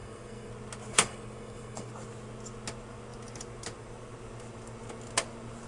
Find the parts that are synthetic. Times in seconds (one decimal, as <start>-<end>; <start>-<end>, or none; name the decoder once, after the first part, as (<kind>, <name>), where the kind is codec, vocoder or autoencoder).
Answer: 0.0-0.5 (codec, SNAC); 0.9-1.9

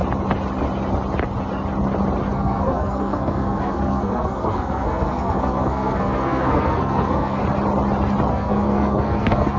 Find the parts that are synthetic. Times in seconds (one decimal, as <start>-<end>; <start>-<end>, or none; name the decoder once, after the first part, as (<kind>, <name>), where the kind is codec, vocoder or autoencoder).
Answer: 2.3-7.4 (codec, SNAC); 8.3-9.6